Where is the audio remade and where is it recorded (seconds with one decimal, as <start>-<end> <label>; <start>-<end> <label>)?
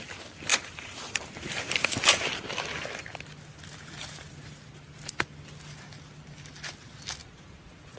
0.0-0.5 recorded; 0.5-1.2 remade; 1.2-7.2 recorded; 7.2-8.0 remade